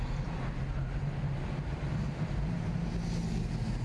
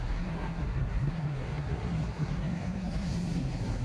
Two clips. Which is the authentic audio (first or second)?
first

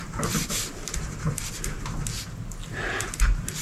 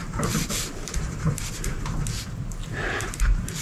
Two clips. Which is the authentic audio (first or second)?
first